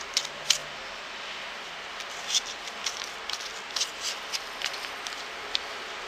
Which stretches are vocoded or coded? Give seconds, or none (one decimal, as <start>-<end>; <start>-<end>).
none